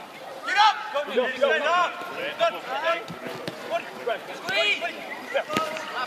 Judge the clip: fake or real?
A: fake